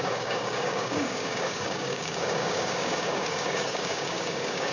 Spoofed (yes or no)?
yes